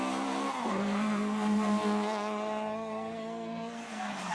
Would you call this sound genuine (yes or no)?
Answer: no